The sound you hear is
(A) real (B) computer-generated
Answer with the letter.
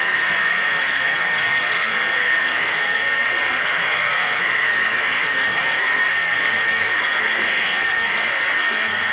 B